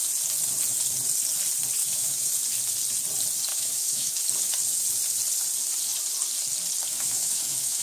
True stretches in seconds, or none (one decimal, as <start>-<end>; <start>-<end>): 0.0-1.8; 2.3-3.5; 4.2-6.9

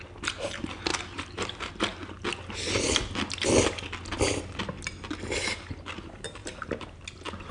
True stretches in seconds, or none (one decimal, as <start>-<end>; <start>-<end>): 0.0-0.9; 1.7-6.4; 7.0-7.5

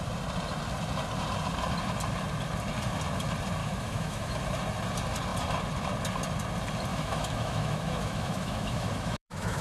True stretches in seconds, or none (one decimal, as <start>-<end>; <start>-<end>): 0.0-3.6; 4.4-6.9